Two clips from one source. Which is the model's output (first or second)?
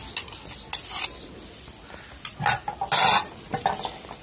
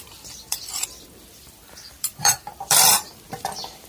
second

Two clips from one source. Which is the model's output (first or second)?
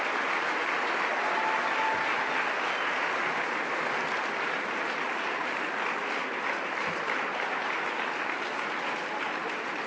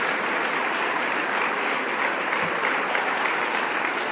second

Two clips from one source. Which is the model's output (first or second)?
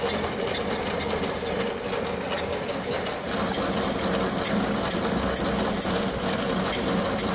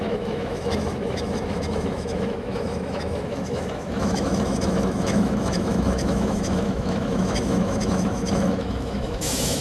second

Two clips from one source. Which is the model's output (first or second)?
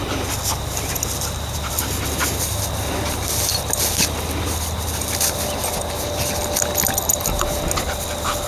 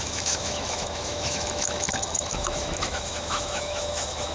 second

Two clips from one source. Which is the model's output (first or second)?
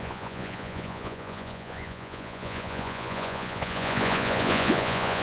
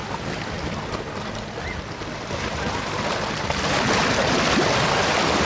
first